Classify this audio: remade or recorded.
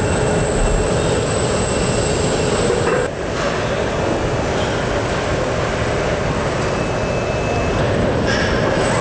recorded